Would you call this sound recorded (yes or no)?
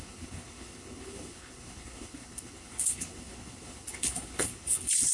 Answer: no